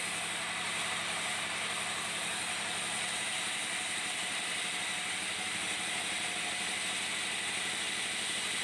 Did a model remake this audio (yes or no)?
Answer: no